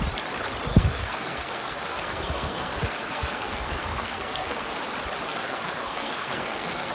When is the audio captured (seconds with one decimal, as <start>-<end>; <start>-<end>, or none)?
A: 0.0-0.7; 4.8-5.3